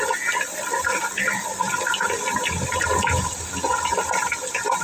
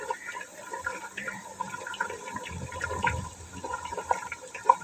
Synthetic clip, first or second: second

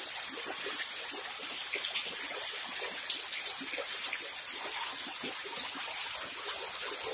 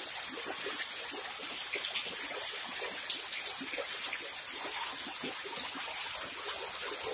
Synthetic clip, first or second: first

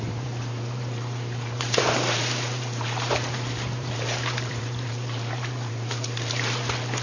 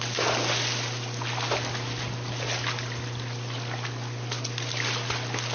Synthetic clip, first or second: first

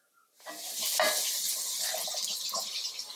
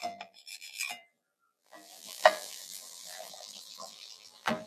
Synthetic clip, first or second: second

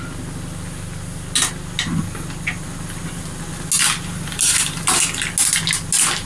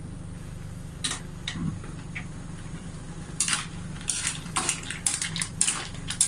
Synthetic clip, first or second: second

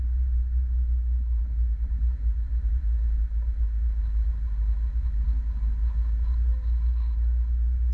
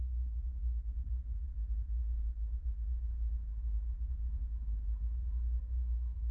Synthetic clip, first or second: second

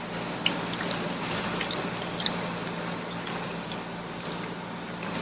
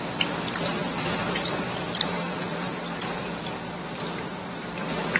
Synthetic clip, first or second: second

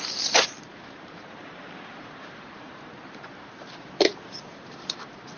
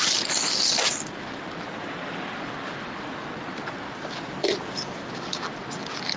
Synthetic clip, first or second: first